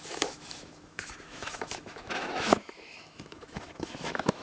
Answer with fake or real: fake